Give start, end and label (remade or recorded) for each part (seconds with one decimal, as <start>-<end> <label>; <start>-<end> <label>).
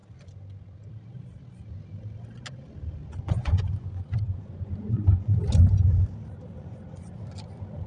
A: 0.0-3.1 recorded; 3.1-5.4 remade; 5.4-6.6 recorded; 6.6-7.1 remade; 7.1-7.9 recorded